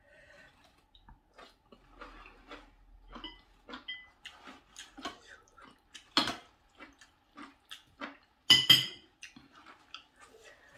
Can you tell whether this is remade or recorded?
recorded